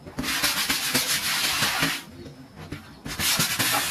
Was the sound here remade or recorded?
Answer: recorded